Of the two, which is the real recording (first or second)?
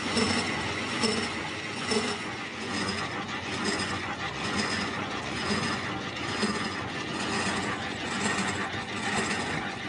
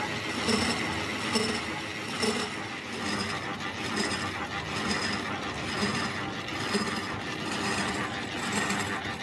second